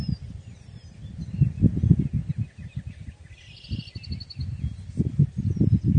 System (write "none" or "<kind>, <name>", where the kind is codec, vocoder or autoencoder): none